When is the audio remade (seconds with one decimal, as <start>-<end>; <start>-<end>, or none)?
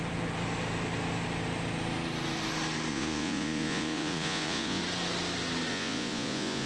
2.9-4.8; 5.7-6.7